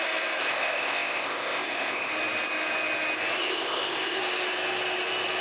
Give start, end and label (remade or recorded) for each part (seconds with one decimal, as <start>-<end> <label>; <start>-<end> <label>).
0.0-0.4 recorded; 0.4-2.1 remade; 2.1-3.4 recorded; 3.4-4.2 remade; 4.2-5.4 recorded